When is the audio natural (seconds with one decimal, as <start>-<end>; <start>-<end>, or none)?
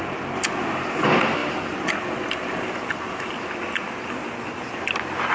0.0-5.3